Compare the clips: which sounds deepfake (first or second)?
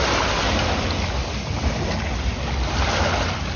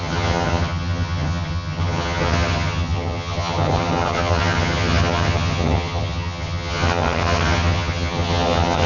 second